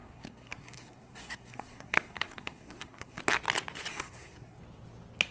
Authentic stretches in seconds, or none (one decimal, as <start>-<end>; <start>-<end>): 3.2-3.9; 4.6-5.3